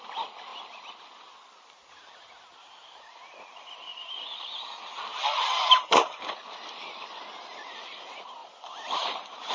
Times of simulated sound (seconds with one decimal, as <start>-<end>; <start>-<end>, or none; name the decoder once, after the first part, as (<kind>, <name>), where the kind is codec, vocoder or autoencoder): 8.4-9.5 (vocoder, BigVGAN v2)